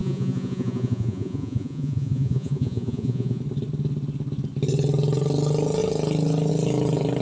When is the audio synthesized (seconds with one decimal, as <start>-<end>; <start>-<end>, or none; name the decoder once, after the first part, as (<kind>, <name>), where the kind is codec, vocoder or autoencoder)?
0.0-3.4 (vocoder, Vocos)